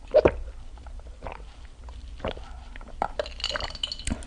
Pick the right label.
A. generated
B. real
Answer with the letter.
B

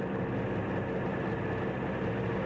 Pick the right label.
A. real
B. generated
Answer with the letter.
A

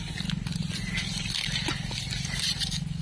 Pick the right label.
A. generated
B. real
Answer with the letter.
B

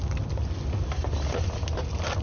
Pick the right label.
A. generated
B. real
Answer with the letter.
B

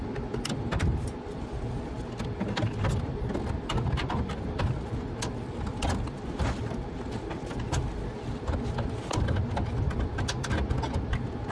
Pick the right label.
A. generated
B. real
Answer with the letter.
B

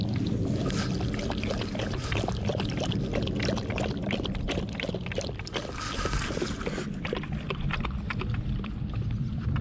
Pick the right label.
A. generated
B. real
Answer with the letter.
B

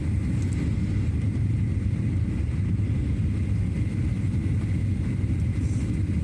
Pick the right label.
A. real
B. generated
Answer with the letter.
A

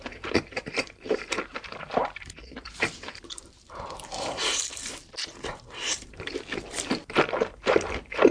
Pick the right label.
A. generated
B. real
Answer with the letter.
A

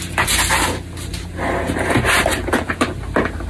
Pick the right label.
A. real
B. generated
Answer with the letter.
A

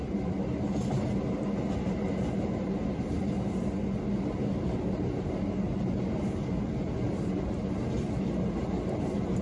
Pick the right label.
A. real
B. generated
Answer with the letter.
A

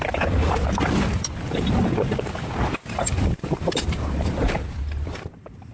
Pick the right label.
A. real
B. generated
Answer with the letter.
B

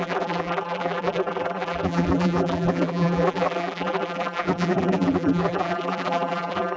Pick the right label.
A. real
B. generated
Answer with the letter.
B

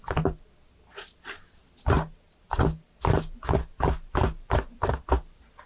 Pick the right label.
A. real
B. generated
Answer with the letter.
A